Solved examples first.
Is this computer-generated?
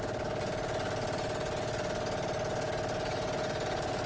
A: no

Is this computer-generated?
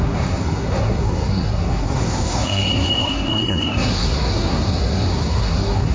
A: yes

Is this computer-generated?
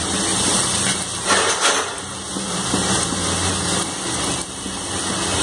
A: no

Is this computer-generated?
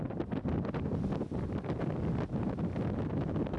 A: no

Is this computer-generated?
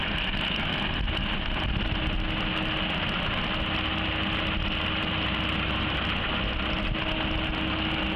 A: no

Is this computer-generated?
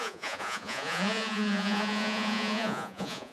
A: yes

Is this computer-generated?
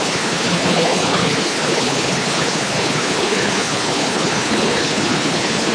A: yes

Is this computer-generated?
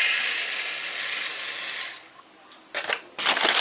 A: no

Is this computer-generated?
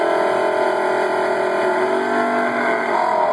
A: no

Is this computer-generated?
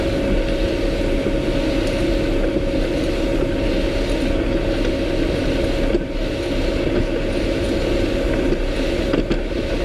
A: no